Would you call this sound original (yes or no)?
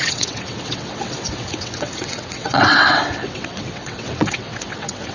no